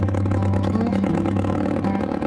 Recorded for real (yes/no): no